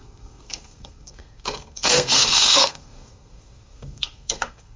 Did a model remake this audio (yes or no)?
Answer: yes